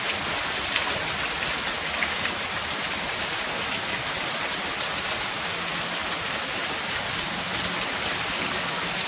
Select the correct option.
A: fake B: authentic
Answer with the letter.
B